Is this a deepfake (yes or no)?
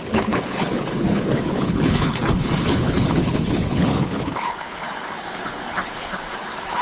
yes